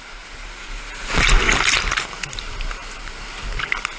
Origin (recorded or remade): recorded